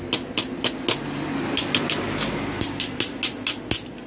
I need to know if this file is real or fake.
real